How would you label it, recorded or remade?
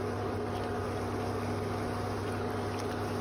recorded